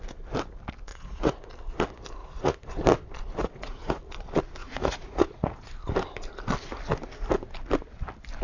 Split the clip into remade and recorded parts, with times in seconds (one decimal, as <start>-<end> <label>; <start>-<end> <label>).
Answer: 0.0-0.9 recorded; 0.9-1.5 remade; 1.5-2.2 recorded; 2.2-2.8 remade; 2.8-3.4 recorded; 3.4-4.0 remade; 4.0-4.6 recorded; 4.6-5.7 remade; 5.7-8.4 recorded